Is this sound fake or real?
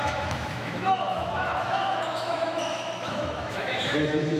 fake